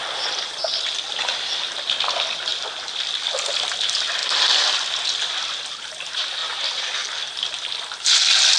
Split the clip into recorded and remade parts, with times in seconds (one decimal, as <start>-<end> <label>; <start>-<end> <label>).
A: 0.0-2.5 recorded; 2.5-3.6 remade; 3.6-4.2 recorded; 4.2-5.6 remade; 5.6-8.6 recorded